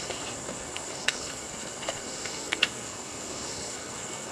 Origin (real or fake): fake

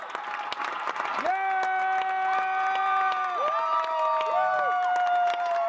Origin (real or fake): real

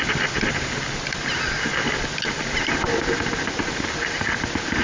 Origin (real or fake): real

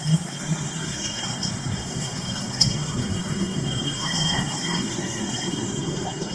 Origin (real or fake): fake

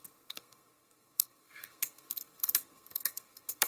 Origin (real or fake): fake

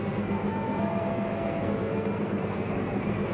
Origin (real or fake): fake